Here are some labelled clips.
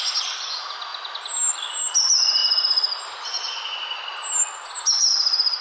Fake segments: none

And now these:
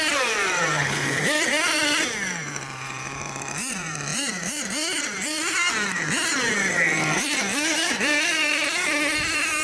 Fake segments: 0.0-9.6 (vocoder, BigVGAN v2)

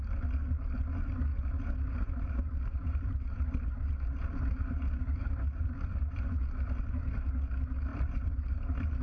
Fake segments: 1.3-6.4 (vocoder, BigVGAN v2); 7.9-9.0